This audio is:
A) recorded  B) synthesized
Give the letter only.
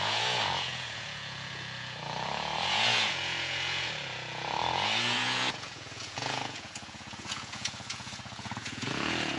B